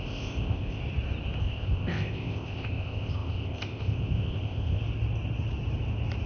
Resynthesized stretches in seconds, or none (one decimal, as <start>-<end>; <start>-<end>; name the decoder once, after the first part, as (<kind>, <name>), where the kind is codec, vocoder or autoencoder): 0.0-0.8 (codec, ZipCodec); 1.4-4.8